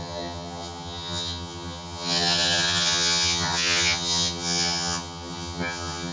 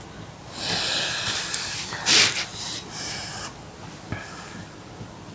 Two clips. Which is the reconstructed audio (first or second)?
first